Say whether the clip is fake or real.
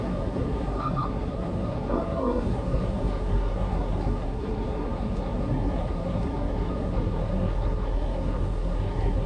fake